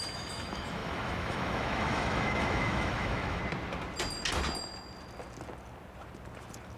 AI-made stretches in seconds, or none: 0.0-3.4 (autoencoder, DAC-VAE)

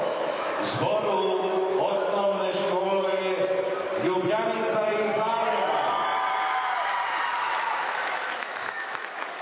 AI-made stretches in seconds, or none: 0.0-3.2 (autoencoder, DAC-VAE); 7.8-9.4

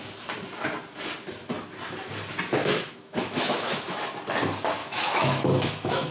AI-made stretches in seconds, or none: 2.6-4.0 (autoencoder, DAC-VAE); 4.8-6.1

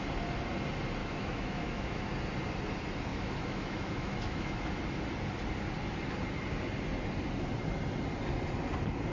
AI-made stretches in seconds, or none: 1.0-2.1 (autoencoder, DAC-VAE); 3.1-4.8

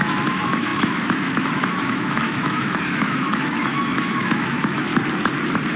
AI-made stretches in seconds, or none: 0.0-4.9 (autoencoder, DAC-VAE)

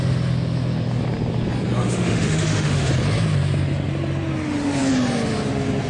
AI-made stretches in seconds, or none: 1.8-2.9 (autoencoder, DAC-VAE)

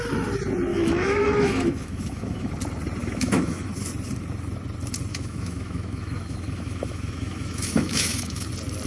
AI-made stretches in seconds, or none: 0.7-2.5 (autoencoder, DAC-VAE); 3.0-3.7; 5.1-8.5

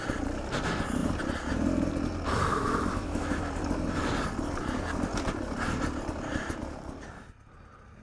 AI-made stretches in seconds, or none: 2.5-3.4 (autoencoder, DAC-VAE)